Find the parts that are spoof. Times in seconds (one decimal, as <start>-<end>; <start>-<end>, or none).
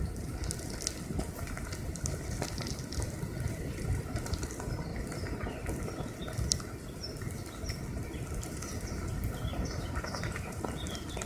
9.5-10.6